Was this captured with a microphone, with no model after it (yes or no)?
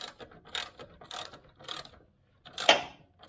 yes